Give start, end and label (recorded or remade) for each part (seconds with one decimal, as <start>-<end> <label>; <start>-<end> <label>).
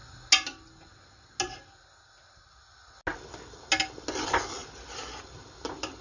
0.0-6.0 recorded